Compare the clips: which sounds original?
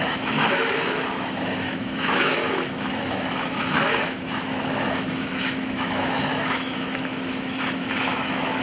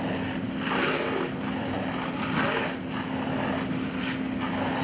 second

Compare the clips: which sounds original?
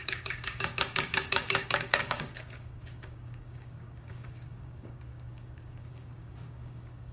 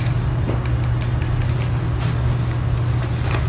second